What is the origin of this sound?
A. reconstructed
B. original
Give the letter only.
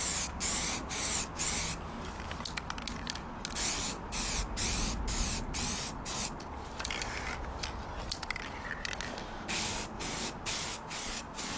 B